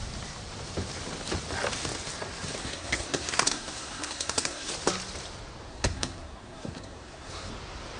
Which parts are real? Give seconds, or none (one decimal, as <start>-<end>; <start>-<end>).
0.0-2.6; 4.7-5.7; 7.5-8.0